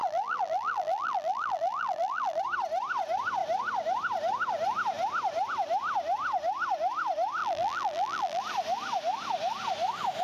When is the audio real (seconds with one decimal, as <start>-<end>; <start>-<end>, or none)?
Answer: 2.4-7.4; 8.4-10.2